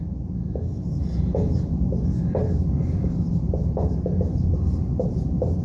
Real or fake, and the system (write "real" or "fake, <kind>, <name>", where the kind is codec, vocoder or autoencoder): real